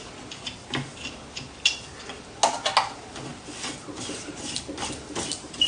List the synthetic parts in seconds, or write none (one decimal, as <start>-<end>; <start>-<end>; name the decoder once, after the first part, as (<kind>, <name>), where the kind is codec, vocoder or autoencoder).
none